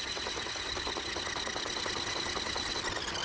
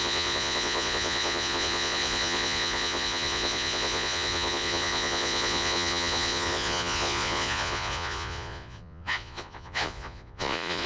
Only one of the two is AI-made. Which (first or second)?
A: second